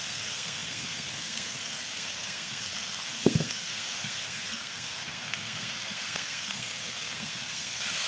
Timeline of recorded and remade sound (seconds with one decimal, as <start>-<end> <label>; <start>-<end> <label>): 0.0-8.1 remade